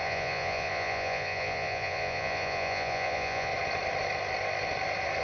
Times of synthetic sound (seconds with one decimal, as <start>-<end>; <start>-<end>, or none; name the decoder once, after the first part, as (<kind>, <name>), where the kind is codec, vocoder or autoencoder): 0.0-3.5 (vocoder, Vocos)